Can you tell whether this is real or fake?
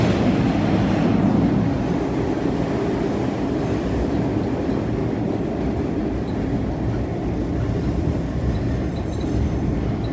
real